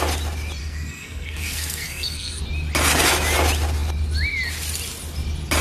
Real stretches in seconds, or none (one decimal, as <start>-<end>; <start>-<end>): 0.0-0.6; 2.4-5.6